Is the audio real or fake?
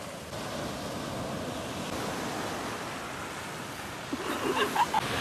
real